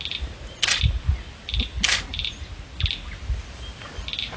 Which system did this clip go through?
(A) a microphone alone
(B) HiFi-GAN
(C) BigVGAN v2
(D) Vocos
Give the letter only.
A